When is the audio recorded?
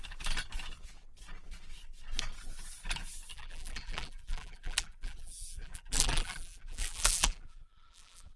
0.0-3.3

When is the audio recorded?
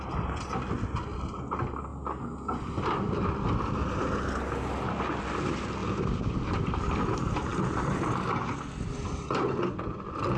0.0-5.8; 6.6-10.4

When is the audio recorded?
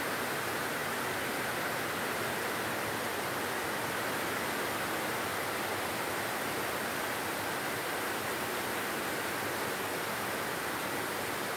0.0-11.6